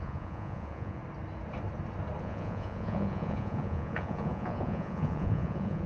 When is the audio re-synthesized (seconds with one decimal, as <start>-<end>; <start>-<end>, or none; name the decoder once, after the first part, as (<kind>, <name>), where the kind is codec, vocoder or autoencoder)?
0.0-1.0 (vocoder, Vocos); 2.2-5.9